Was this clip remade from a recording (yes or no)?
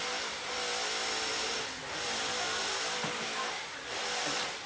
yes